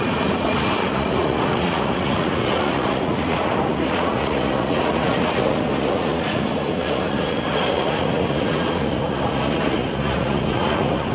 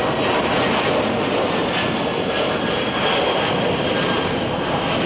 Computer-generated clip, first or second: first